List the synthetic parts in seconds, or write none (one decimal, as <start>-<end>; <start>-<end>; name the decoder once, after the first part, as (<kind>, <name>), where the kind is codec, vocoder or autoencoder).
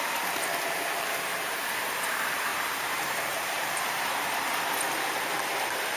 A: 1.3-2.0 (vocoder, BigVGAN v2); 2.5-4.6